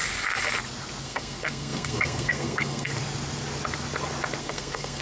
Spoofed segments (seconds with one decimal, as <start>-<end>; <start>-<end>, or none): 1.0-2.9; 4.4-5.0